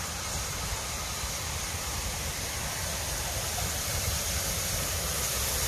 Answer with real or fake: real